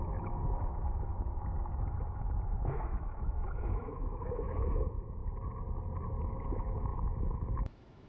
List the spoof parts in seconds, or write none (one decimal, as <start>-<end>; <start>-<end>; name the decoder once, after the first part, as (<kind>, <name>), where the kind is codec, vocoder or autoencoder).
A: 0.0-5.2 (autoencoder, DAC-VAE); 6.2-8.1